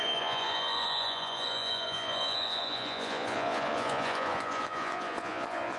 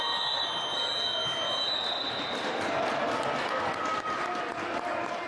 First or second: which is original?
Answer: second